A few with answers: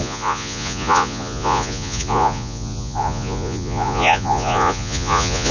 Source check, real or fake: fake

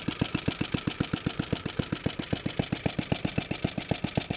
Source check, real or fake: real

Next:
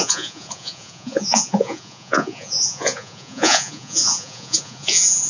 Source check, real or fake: fake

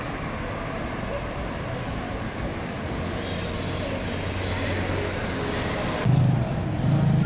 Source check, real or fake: real